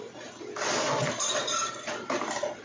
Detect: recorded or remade recorded